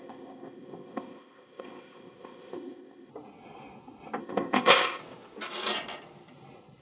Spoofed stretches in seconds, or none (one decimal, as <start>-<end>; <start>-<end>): 0.0-3.1; 4.2-5.0